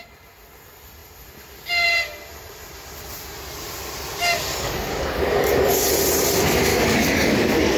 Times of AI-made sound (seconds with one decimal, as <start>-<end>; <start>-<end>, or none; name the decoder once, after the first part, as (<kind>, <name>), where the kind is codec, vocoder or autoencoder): 4.5-5.9 (codec, DAC); 6.7-7.8